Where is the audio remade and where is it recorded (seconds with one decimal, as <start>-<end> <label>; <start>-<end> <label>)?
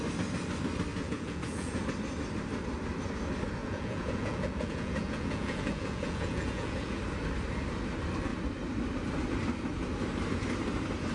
0.0-0.9 recorded; 0.9-1.8 remade; 1.8-3.6 recorded; 3.6-7.0 remade; 7.0-11.1 recorded